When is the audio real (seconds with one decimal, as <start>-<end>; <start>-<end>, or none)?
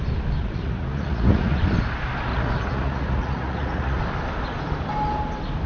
0.0-0.4; 1.6-2.3; 4.0-5.7